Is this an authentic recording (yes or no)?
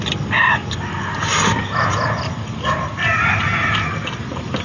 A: yes